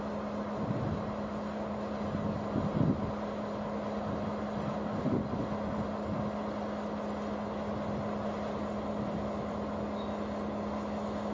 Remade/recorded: recorded